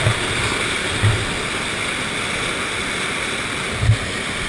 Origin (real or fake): real